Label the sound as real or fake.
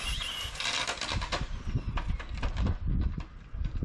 real